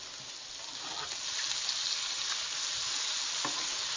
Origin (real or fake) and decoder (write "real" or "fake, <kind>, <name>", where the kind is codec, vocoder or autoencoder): real